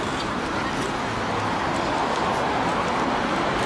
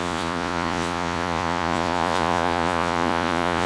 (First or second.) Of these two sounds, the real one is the first